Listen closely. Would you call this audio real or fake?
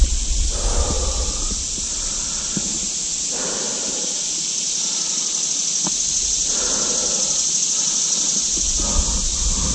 real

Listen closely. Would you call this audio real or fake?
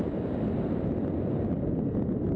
real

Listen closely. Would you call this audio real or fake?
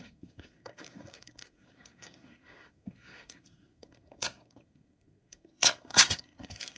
fake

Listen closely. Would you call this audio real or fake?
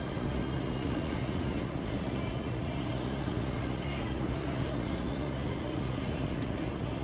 fake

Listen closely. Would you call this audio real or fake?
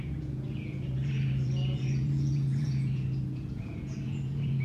fake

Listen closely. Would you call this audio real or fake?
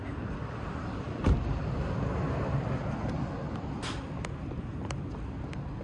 real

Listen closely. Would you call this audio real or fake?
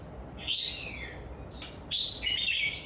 real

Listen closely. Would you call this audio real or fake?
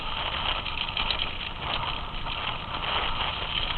real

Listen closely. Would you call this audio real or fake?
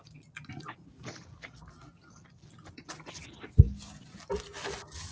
real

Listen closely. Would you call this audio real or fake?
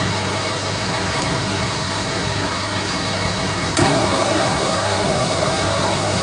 fake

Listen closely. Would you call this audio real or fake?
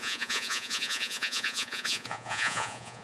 fake